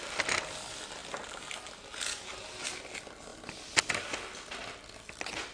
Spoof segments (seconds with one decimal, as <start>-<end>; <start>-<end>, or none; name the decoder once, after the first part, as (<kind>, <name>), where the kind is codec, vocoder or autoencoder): none